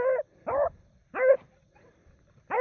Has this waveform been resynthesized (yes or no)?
no